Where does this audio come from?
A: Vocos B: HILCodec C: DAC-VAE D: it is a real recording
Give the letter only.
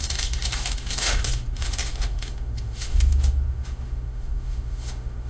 C